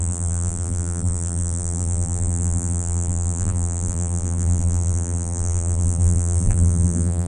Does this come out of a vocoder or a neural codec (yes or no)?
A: yes